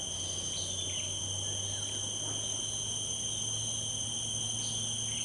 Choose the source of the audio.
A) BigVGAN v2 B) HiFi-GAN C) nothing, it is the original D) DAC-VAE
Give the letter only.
C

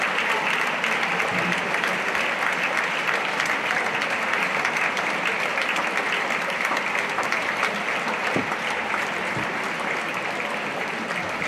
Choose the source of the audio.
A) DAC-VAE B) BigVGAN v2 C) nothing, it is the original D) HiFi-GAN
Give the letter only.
C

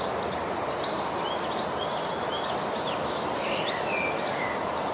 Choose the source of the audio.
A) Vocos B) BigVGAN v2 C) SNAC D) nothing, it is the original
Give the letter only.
D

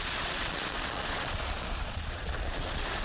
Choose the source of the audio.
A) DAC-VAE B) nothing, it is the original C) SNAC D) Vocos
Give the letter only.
D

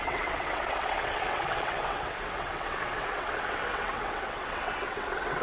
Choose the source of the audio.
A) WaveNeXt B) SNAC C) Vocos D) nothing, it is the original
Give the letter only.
A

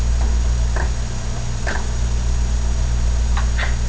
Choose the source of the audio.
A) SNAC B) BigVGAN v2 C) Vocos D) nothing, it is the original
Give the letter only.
D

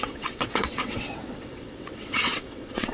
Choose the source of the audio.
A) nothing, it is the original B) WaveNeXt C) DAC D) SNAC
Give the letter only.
B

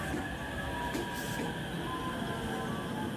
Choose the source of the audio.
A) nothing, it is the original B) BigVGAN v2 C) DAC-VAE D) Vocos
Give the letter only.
A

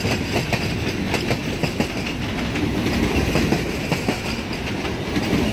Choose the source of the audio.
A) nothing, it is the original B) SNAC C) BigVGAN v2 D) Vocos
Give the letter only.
A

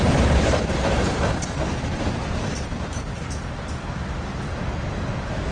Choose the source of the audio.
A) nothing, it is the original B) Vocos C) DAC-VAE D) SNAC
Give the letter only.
A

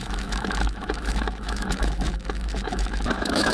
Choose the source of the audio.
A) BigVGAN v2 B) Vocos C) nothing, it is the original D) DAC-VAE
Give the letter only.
D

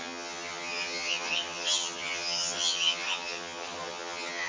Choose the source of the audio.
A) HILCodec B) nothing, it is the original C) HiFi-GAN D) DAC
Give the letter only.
C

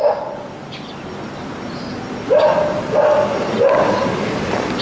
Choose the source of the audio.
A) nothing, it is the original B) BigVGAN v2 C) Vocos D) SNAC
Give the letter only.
A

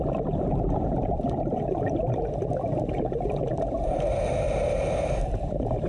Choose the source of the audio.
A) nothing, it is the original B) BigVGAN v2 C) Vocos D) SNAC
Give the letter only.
B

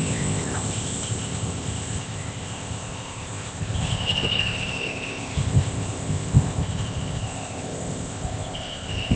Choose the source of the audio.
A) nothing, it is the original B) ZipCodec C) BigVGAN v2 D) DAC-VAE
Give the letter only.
B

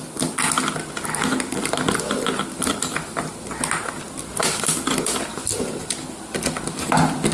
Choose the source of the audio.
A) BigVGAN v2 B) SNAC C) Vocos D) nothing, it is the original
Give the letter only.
D